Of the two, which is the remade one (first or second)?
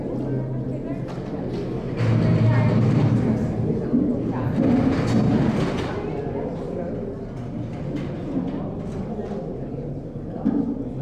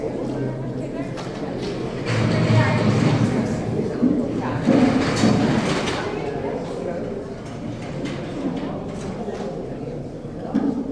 second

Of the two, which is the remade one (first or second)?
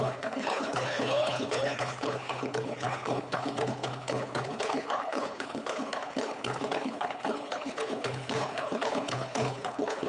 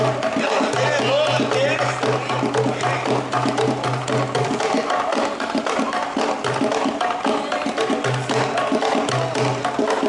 first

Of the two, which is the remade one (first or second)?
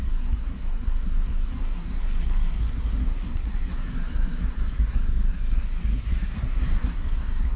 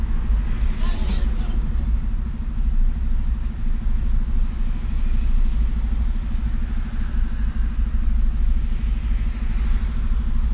first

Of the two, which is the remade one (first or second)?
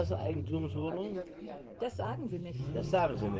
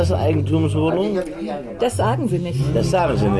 first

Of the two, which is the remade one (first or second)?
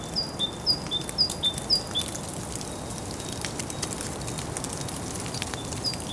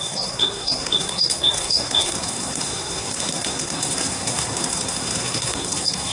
second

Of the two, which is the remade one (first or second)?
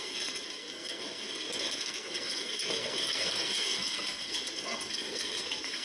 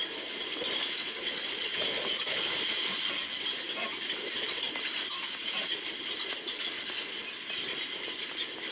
first